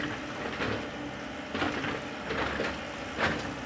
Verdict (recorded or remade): recorded